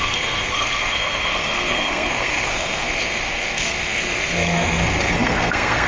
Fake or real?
fake